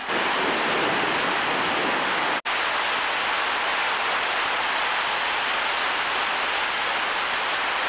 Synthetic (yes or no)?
no